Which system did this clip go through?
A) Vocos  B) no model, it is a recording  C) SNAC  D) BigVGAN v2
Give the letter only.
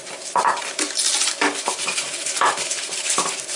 D